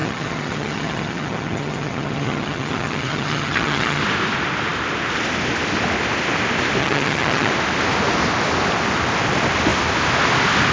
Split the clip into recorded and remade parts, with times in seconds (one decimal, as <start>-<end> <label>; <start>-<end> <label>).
0.0-4.0 remade; 4.0-6.8 recorded; 6.8-7.5 remade; 7.5-10.7 recorded